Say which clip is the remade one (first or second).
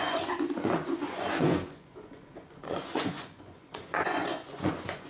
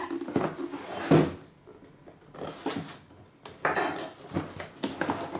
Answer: first